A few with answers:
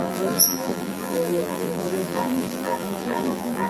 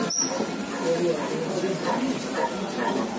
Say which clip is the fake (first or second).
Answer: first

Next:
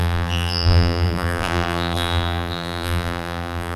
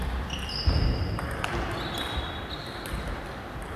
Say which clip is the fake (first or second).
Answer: first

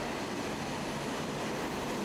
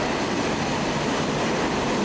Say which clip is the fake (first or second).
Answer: second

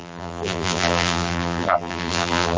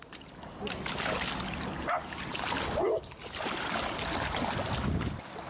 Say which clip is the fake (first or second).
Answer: first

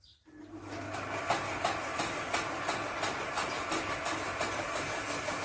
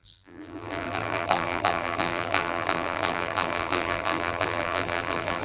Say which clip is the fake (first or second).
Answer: second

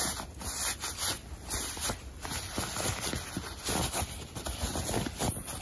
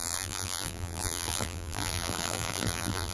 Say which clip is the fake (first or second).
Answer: second